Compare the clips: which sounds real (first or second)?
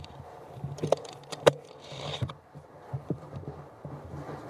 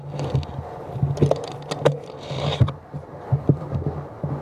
second